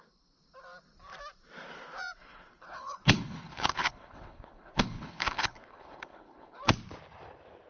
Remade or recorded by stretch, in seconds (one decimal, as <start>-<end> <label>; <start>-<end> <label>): 0.0-2.2 recorded; 2.2-6.6 remade; 6.6-7.7 recorded

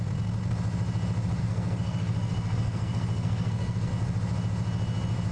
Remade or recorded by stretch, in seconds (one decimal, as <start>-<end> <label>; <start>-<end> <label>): 0.0-1.4 recorded; 1.4-3.9 remade; 3.9-5.3 recorded